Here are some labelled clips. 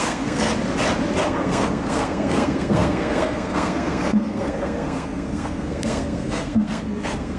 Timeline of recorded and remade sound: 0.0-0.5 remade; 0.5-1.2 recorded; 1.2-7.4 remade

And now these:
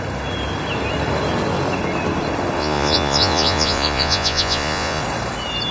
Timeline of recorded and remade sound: 0.0-2.6 recorded; 2.6-5.0 remade; 5.0-5.7 recorded

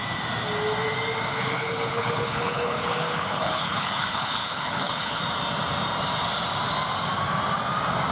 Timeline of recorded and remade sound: 0.0-1.3 recorded; 1.3-5.2 remade; 5.2-8.1 recorded

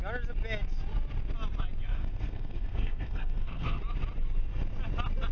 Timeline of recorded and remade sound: 0.0-1.9 recorded; 1.9-3.8 remade; 3.8-5.3 recorded

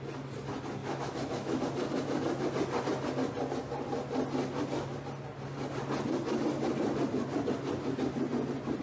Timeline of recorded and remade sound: 0.0-0.8 recorded; 0.8-1.6 remade; 1.6-8.8 recorded

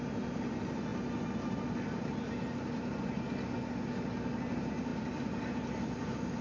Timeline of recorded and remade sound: 0.0-6.4 recorded

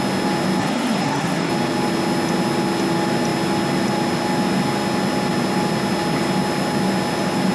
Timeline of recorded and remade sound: 0.0-0.6 recorded; 0.6-1.5 remade; 1.5-7.5 recorded

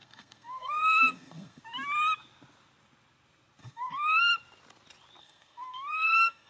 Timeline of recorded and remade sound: 0.0-1.6 remade; 1.6-3.6 recorded; 3.6-4.2 remade; 4.2-5.2 recorded; 5.2-6.5 remade